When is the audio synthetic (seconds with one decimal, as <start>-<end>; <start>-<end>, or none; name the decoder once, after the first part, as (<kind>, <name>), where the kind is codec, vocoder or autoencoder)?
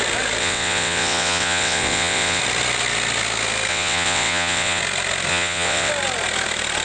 0.4-2.4 (vocoder, WaveNeXt); 3.7-4.8; 5.3-5.9